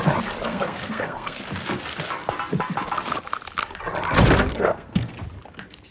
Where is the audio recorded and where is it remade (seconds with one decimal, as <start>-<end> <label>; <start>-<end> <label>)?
0.0-0.5 recorded; 0.5-1.4 remade; 1.4-4.5 recorded; 4.5-5.1 remade; 5.1-5.9 recorded